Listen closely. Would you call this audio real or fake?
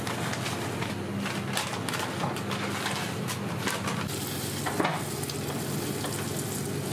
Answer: real